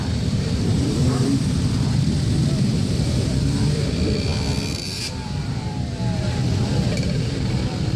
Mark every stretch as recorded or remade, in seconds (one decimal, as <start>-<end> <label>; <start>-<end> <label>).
0.0-8.0 remade